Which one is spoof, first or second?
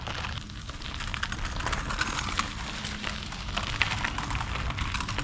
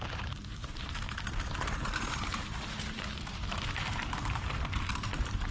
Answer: second